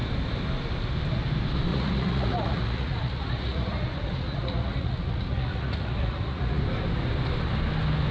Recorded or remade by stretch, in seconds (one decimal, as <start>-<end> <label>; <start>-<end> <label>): 0.0-1.7 recorded; 1.7-6.6 remade; 6.6-8.1 recorded